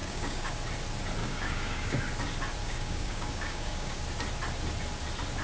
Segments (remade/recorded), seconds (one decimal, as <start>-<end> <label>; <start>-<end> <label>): 0.0-0.5 remade; 0.5-1.2 recorded; 1.2-2.0 remade; 2.0-2.6 recorded; 2.6-4.0 remade; 4.0-5.4 recorded